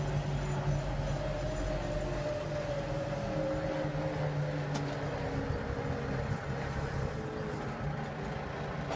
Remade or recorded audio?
recorded